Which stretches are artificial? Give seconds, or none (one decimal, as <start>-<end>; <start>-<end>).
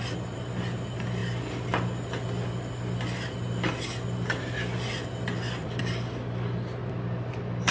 none